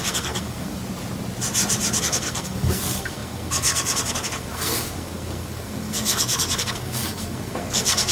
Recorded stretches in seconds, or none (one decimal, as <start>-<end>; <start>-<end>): 0.8-2.0